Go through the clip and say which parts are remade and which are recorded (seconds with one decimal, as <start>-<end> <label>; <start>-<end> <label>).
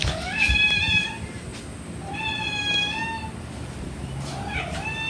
0.0-0.9 recorded; 0.9-1.5 remade; 1.5-4.2 recorded; 4.2-5.1 remade